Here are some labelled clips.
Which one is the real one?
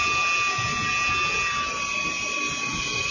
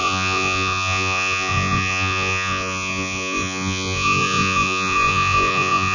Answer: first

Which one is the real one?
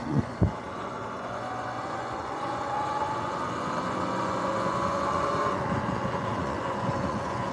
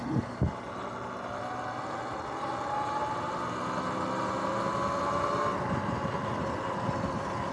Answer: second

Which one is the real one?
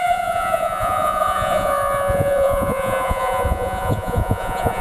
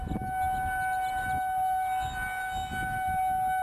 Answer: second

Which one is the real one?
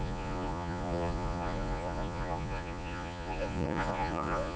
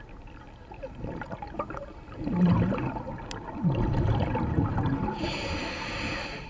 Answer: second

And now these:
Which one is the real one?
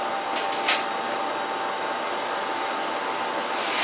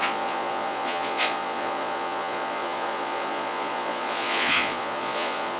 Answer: first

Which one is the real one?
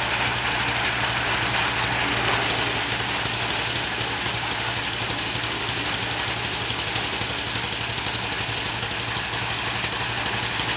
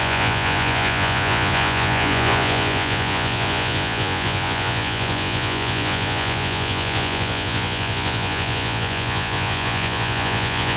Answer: first